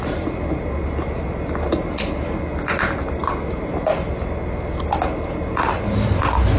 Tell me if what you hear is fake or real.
real